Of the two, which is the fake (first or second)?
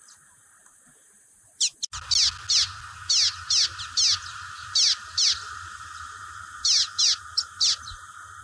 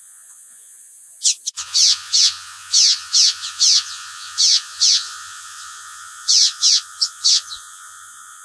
second